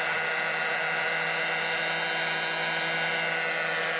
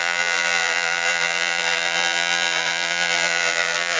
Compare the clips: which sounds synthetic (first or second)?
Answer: second